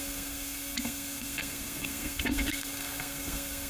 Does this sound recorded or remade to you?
remade